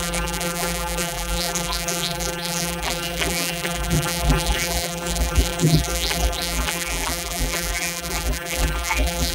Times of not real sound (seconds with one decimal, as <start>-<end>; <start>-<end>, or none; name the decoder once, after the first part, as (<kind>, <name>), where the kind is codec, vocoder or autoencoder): 0.0-9.3 (vocoder, BigVGAN v2)